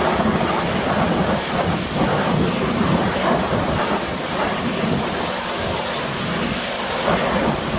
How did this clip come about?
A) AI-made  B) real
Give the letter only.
B